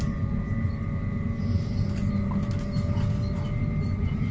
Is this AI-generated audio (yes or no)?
no